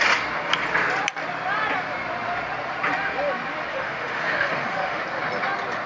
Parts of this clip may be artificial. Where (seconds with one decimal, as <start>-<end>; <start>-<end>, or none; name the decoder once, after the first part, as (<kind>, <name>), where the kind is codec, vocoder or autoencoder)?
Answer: 3.7-5.0 (autoencoder, DAC-VAE)

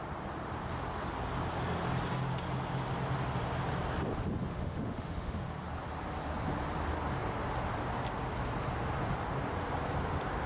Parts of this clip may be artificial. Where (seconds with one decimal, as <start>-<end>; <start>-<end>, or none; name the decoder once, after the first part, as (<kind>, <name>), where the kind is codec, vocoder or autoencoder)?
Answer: 4.5-5.4 (autoencoder, DAC-VAE)